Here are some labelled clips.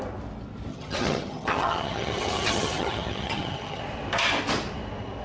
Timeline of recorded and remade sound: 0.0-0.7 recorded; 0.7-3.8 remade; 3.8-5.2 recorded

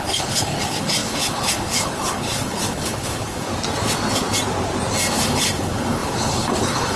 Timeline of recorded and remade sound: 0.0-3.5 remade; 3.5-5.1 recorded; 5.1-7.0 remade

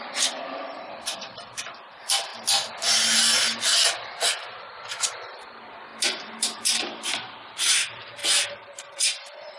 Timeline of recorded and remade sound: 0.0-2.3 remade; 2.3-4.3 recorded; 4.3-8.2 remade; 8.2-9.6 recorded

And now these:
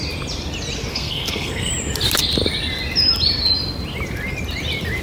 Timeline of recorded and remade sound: 0.0-0.9 recorded; 0.9-1.7 remade; 1.7-5.0 recorded